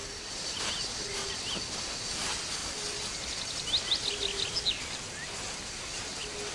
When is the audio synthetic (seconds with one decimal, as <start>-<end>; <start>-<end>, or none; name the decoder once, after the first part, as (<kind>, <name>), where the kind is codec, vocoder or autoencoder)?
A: 0.0-0.7 (vocoder, BigVGAN v2); 1.2-2.0